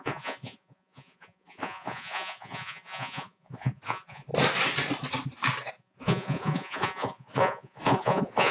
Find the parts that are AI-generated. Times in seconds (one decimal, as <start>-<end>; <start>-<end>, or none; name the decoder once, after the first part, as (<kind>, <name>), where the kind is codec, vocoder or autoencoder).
0.0-4.3 (vocoder, Vocos); 5.7-8.5